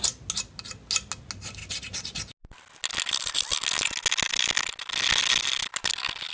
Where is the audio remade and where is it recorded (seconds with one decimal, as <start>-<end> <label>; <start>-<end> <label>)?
0.0-6.3 recorded